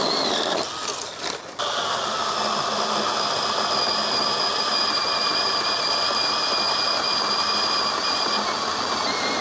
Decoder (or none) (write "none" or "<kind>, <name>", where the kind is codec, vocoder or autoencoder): none